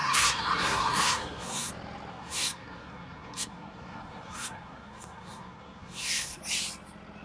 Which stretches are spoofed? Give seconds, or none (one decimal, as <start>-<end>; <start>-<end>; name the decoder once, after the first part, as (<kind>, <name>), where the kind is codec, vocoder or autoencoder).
0.0-1.7 (codec, SNAC); 2.1-6.4